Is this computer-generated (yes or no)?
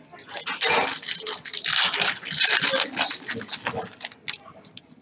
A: no